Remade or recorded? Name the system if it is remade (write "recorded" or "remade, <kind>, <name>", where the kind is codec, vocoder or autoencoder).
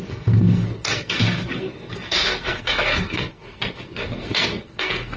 remade, codec, SNAC